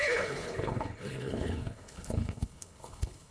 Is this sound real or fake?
fake